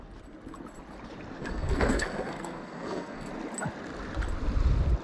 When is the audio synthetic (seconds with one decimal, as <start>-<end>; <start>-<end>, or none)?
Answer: 1.4-3.3